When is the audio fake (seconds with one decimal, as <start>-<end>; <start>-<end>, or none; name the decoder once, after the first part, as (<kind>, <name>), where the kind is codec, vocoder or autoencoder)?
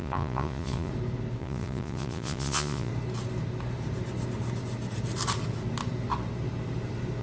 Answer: 0.0-0.9 (vocoder, Vocos); 1.4-2.9